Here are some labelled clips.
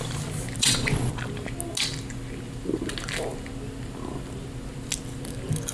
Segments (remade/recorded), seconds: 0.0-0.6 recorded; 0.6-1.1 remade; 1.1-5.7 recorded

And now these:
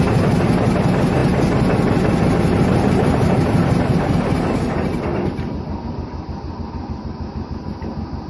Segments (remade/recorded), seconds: 0.0-8.3 recorded

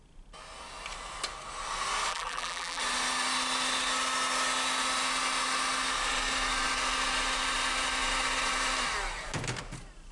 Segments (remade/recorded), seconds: 0.0-2.1 recorded; 2.1-2.8 remade; 2.8-10.1 recorded

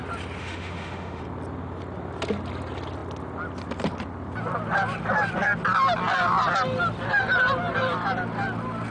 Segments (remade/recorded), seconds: 0.0-0.4 recorded; 0.4-1.2 remade; 1.2-8.9 recorded

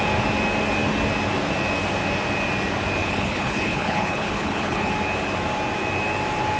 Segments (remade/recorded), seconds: 0.0-3.0 recorded; 3.0-4.9 remade; 4.9-6.6 recorded

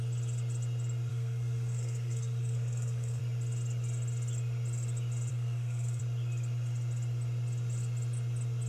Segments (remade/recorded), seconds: 0.0-1.1 recorded; 1.1-3.2 remade; 3.2-5.3 recorded; 5.3-6.0 remade; 6.0-8.7 recorded

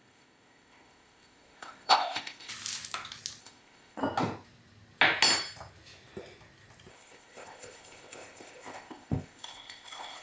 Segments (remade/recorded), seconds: 0.0-2.5 remade; 2.5-3.4 recorded; 3.4-4.0 remade; 4.0-6.9 recorded; 6.9-10.2 remade

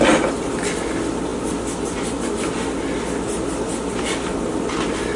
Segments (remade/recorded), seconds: 0.0-5.2 recorded